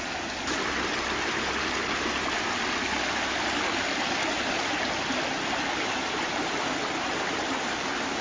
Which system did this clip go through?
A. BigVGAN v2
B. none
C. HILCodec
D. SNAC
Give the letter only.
B